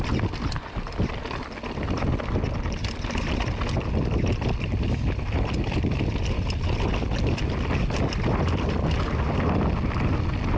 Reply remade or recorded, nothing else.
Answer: recorded